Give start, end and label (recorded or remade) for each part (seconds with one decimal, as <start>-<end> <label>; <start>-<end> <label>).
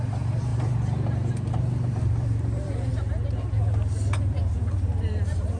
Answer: 0.0-2.9 remade; 2.9-4.4 recorded; 4.4-5.6 remade